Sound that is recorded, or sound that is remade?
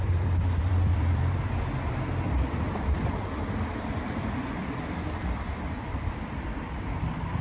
remade